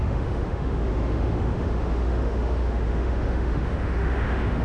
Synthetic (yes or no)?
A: yes